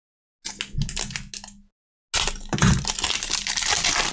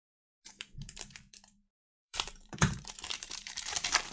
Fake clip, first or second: second